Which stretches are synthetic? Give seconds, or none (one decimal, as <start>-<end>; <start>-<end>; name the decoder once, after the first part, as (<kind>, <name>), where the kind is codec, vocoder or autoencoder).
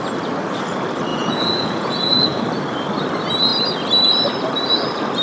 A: 1.1-2.4 (vocoder, Vocos)